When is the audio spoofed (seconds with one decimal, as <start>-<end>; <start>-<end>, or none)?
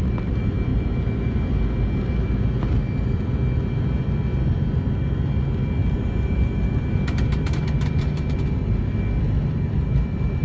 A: 5.8-8.5